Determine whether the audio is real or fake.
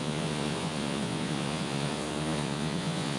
fake